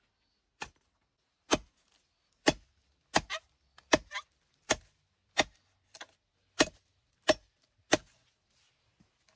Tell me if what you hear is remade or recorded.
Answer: recorded